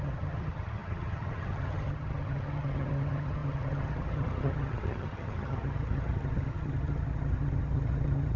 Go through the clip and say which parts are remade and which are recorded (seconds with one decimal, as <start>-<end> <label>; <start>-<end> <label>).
0.0-8.4 remade